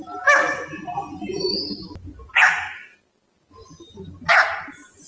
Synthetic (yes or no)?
no